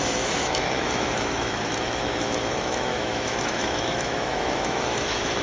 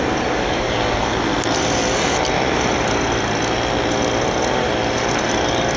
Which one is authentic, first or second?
second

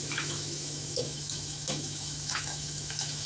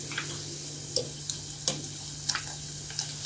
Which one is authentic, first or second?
second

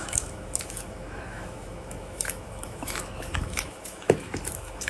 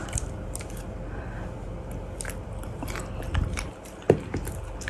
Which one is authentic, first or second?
second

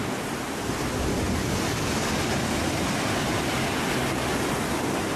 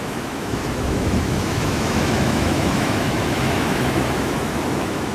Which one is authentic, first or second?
first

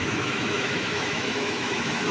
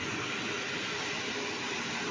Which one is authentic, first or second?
second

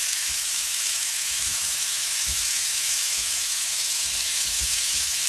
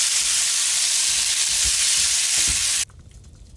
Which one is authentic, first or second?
second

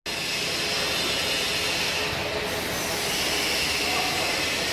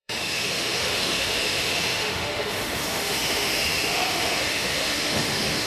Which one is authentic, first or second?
first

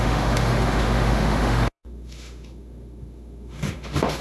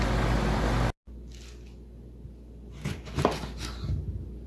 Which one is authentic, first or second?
second